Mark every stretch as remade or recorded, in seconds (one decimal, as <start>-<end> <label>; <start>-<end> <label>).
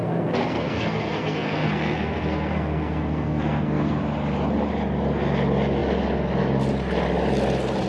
0.0-4.0 remade; 4.0-7.9 recorded